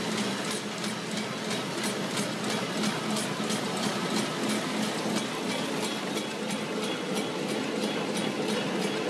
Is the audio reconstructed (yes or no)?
no